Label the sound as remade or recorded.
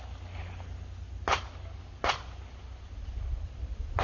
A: recorded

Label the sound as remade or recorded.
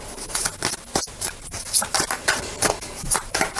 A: remade